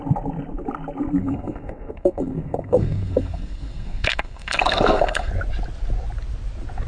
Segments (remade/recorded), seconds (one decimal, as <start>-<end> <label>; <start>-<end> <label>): 0.0-1.2 recorded; 1.2-5.3 remade; 5.3-6.9 recorded